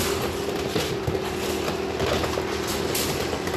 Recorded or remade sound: recorded